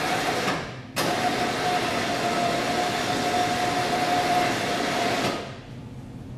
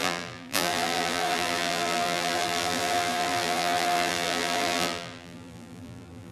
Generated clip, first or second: second